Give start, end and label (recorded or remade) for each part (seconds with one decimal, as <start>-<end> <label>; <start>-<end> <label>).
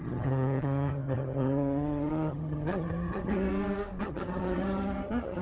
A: 0.0-3.5 remade; 3.5-4.0 recorded; 4.0-5.4 remade